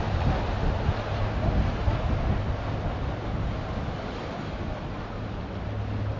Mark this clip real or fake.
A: real